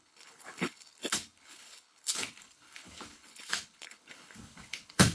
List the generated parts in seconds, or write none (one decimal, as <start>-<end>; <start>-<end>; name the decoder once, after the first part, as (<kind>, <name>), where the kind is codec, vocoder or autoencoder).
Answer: 0.0-5.1 (codec, HILCodec)